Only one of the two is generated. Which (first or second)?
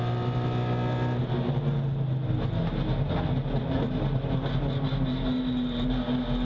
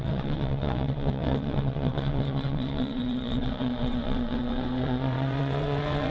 second